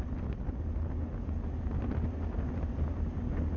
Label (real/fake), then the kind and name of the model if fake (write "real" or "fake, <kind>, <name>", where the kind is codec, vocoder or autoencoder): real